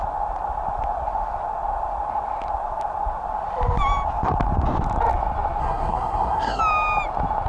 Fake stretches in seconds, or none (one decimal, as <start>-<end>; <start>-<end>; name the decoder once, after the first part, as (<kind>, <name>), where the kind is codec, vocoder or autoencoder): 5.6-6.6 (codec, SNAC)